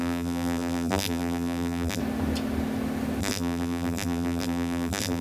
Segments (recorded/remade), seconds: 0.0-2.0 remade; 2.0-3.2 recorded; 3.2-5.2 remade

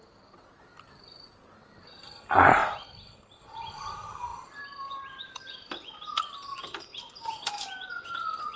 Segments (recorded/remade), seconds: 0.0-4.3 recorded; 4.3-7.5 remade; 7.5-8.6 recorded

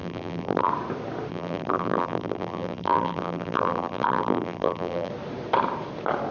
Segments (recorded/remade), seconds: 0.0-0.7 remade; 0.7-1.3 recorded; 1.3-5.1 remade; 5.1-6.3 recorded